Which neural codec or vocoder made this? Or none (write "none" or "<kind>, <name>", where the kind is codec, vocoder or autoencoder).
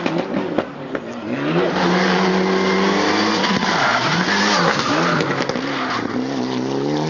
none